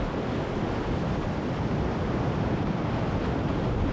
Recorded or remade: recorded